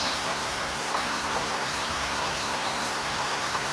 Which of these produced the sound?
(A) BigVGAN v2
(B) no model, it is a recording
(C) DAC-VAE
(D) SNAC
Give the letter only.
D